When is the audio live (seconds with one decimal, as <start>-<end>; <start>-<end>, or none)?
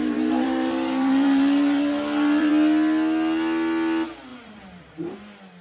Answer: 2.5-4.3; 5.1-5.6